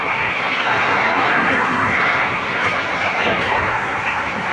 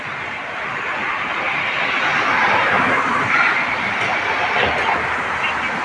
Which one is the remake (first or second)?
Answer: first